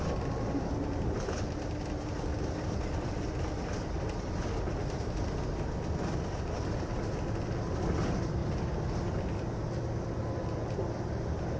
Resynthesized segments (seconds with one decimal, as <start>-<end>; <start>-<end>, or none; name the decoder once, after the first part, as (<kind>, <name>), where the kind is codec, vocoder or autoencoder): none